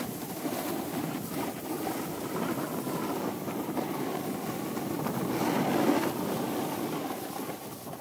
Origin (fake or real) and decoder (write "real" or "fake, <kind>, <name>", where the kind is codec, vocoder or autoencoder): real